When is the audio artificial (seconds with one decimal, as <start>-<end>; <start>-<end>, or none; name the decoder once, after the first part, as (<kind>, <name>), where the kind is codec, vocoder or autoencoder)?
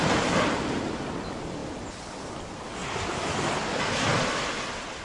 none